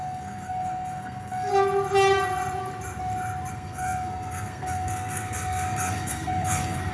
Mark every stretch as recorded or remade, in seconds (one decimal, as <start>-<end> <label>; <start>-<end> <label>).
0.0-1.5 remade; 1.5-3.5 recorded; 3.5-6.9 remade